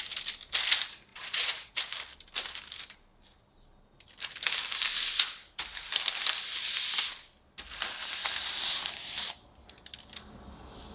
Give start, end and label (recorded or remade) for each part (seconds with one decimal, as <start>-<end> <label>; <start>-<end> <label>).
0.0-1.1 recorded; 1.1-1.7 remade; 1.7-10.9 recorded